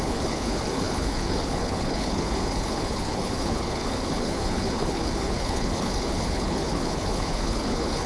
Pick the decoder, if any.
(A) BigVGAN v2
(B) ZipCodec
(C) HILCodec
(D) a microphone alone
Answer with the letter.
C